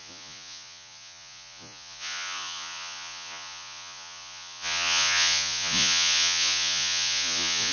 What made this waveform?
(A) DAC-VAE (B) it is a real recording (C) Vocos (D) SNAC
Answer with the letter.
C